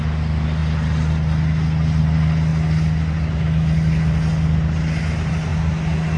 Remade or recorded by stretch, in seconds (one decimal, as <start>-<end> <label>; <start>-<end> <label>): 0.0-6.2 recorded